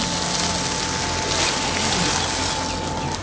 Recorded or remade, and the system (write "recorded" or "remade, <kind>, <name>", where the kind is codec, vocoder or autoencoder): recorded